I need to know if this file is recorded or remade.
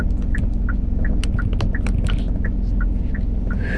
recorded